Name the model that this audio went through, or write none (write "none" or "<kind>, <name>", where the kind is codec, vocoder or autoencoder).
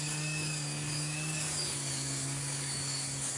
codec, DAC